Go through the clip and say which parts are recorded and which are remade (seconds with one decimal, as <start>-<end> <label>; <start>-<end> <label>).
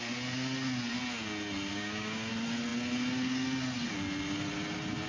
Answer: 0.0-1.7 recorded; 1.7-2.3 remade; 2.3-5.1 recorded